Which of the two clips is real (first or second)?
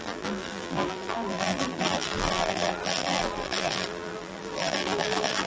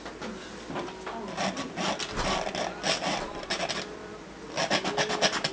second